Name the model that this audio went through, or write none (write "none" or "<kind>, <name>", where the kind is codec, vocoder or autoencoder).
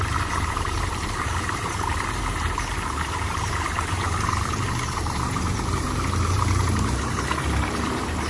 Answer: vocoder, BigVGAN v2